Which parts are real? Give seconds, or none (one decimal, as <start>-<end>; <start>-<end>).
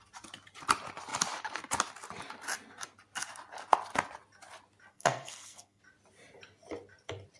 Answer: 0.0-4.9; 5.8-7.4